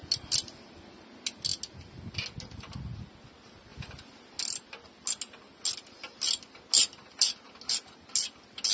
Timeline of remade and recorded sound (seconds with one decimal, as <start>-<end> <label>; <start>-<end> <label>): 0.0-8.7 recorded